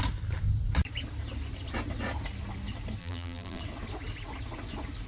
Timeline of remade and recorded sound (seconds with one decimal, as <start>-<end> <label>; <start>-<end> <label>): 0.0-3.0 recorded; 3.0-3.6 remade; 3.6-5.1 recorded